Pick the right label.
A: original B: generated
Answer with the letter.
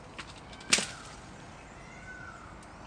A